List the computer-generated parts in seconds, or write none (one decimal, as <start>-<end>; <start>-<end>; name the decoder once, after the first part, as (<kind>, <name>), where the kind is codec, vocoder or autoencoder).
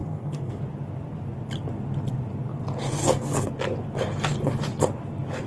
0.0-0.6 (codec, SNAC); 3.0-3.5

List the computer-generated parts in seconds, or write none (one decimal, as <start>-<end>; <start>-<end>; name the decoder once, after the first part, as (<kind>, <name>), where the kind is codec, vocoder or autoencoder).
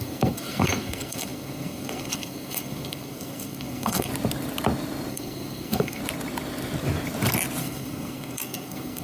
0.0-4.1 (codec, SNAC); 5.1-6.0; 7.6-9.0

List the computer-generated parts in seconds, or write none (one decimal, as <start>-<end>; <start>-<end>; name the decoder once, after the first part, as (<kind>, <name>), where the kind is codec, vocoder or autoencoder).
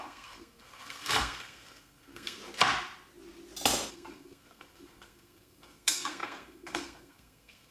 0.0-2.4 (codec, SNAC); 3.9-7.7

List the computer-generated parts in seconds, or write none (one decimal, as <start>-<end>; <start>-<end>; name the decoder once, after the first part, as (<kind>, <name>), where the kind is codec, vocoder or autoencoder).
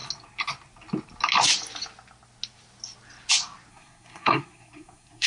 3.7-5.3 (codec, SNAC)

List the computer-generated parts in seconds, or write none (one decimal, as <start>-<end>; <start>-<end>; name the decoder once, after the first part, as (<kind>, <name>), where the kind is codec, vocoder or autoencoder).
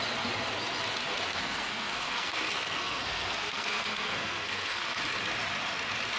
1.3-5.0 (codec, SNAC)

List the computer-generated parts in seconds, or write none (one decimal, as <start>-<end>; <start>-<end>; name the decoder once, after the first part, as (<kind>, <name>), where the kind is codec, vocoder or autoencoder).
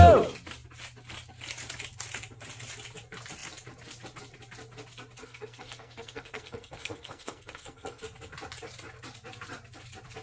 5.2-8.0 (codec, SNAC)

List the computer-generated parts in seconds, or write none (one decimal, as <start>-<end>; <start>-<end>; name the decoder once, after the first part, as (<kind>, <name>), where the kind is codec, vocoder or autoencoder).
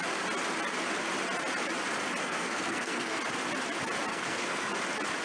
2.2-3.2 (codec, SNAC); 4.1-4.7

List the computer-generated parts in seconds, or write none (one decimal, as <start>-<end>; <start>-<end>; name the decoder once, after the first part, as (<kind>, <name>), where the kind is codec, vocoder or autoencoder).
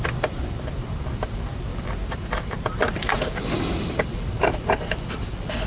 none